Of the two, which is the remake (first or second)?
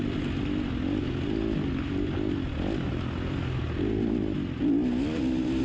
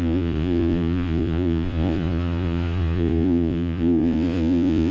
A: second